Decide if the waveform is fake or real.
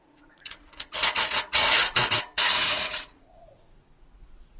fake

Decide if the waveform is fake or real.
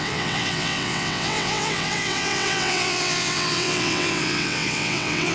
fake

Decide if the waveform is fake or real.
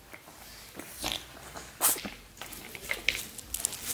real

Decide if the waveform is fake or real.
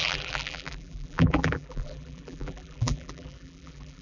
fake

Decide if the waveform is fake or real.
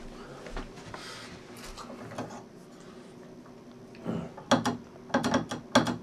real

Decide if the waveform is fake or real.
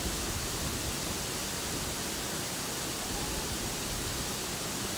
real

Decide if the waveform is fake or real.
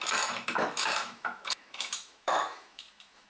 fake